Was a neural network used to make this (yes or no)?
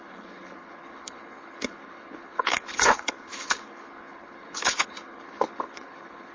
yes